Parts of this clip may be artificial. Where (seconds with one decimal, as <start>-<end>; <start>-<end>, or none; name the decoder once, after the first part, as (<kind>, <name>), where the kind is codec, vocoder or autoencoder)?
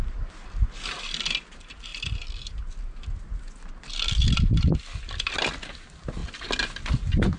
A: none